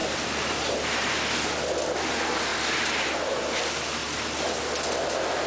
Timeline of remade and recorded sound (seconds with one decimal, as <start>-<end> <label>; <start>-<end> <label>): 0.0-1.1 remade; 1.1-2.5 recorded; 2.5-3.6 remade; 3.6-4.0 recorded; 4.0-4.6 remade; 4.6-5.5 recorded